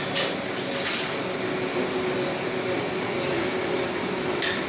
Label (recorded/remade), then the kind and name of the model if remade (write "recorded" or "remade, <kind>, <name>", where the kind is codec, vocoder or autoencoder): recorded